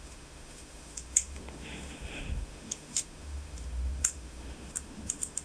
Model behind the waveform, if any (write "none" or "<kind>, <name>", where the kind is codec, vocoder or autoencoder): autoencoder, DAC-VAE